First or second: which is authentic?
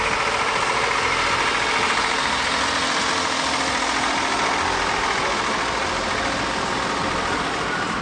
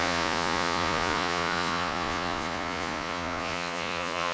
first